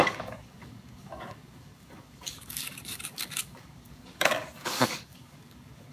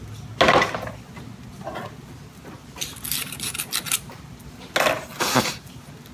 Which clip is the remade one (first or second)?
first